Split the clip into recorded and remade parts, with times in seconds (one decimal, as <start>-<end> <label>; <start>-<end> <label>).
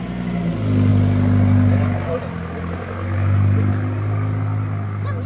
0.0-5.3 recorded